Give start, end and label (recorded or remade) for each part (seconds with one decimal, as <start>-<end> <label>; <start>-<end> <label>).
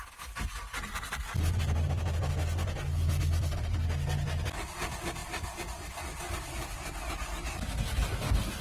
0.0-8.6 recorded